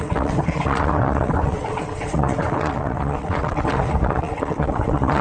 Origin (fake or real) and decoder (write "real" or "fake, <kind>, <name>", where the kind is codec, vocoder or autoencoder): fake, vocoder, WaveNeXt